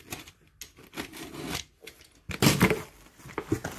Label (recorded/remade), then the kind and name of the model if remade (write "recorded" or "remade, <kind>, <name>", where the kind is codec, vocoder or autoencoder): recorded